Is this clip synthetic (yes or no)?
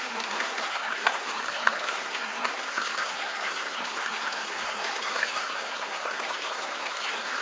yes